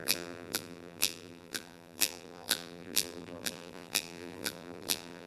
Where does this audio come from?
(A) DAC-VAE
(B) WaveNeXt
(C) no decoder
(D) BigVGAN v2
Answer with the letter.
D